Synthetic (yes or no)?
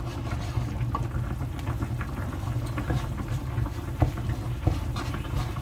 yes